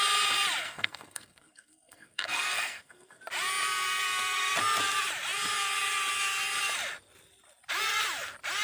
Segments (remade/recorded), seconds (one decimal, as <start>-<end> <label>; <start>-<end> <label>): 0.0-0.6 recorded; 0.6-3.2 remade; 3.2-8.6 recorded